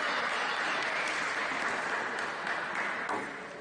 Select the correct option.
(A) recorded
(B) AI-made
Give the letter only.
A